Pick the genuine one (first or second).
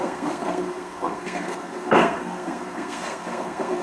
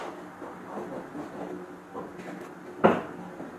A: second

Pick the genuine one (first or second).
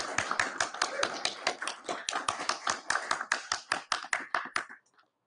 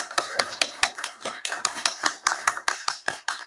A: first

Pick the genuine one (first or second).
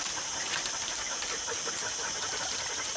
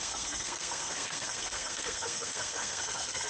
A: first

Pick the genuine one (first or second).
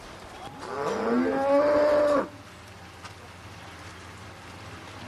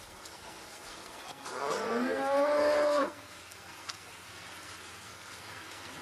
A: first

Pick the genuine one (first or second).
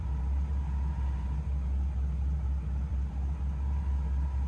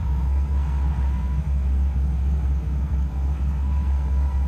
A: first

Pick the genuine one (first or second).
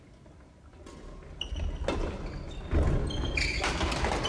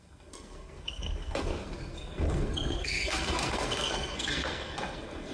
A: first